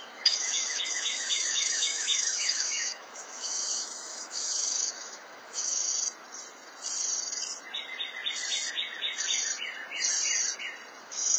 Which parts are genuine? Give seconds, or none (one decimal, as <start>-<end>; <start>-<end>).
5.9-11.0